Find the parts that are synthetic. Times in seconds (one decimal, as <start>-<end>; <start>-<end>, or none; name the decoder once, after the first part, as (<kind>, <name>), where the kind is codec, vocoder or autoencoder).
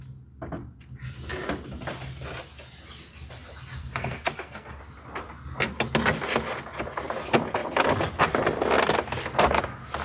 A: 3.8-4.8 (codec, SNAC)